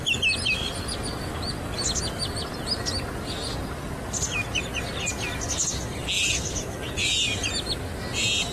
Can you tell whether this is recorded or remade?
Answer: recorded